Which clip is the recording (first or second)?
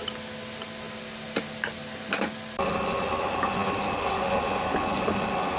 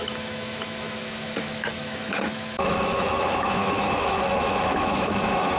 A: first